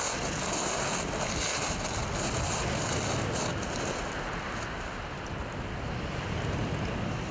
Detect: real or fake real